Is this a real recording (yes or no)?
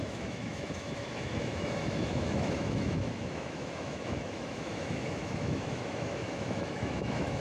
no